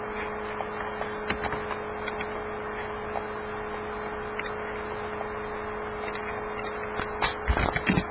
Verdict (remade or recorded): recorded